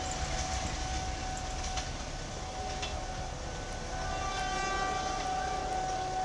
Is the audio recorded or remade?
recorded